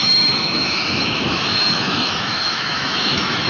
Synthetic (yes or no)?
yes